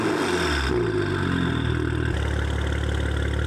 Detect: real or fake real